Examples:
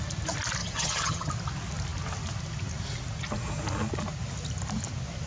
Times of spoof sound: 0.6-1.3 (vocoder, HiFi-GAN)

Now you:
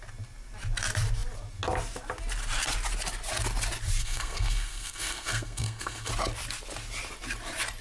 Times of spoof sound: 4.0-6.1 (codec, SNAC)

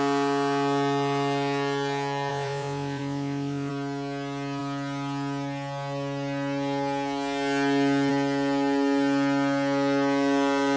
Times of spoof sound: 2.3-3.7 (vocoder, Vocos)

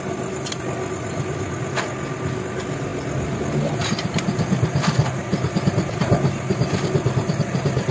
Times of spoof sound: none

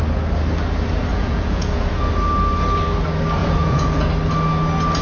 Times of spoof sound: 1.1-2.0 (vocoder, Vocos); 3.4-4.1

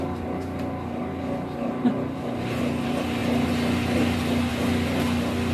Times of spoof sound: none

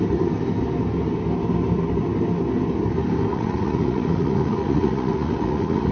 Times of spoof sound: 3.3-5.9 (vocoder, Vocos)

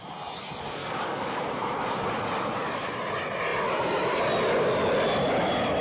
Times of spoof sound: 0.8-1.4 (codec, DAC)